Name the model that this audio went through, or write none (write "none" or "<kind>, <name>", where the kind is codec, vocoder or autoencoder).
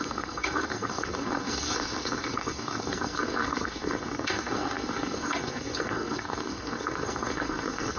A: codec, SNAC